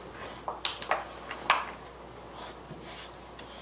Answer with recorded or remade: recorded